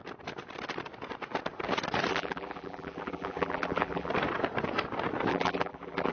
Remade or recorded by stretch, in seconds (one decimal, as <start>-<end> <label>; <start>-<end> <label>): 0.0-2.1 recorded; 2.1-4.1 remade; 4.1-5.3 recorded; 5.3-6.1 remade